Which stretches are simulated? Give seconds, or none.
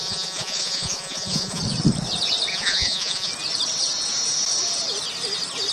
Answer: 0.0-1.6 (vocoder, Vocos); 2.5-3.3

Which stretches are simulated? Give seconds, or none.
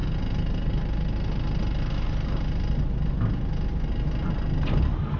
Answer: none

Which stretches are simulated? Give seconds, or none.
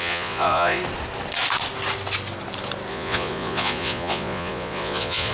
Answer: 0.0-0.8 (vocoder, Vocos); 2.9-5.3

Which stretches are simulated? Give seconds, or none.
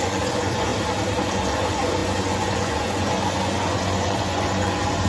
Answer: 0.0-0.7 (vocoder, Vocos); 1.2-5.1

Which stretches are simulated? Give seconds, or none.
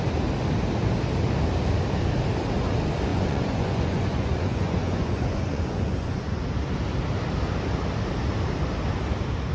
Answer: 3.1-6.3 (vocoder, Vocos)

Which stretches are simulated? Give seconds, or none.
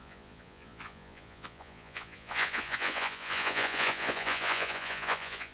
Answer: 0.0-5.5 (vocoder, Vocos)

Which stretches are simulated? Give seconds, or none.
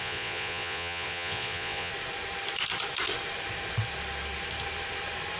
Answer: 0.0-1.9 (vocoder, Vocos)